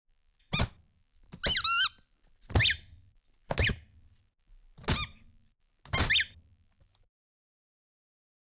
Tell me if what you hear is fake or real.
real